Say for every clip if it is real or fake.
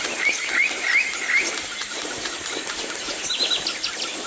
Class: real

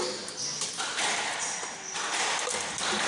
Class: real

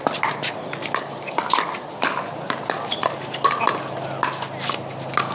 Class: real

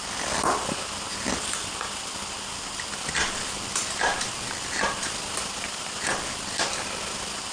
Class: real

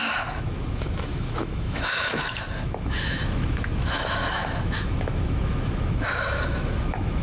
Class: fake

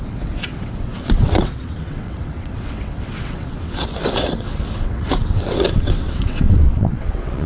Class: fake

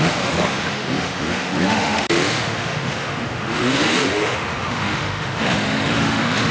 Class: fake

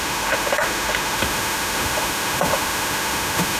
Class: fake